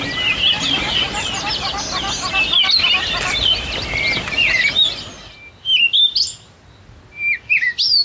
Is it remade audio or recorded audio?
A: recorded